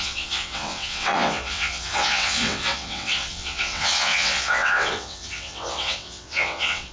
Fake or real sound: fake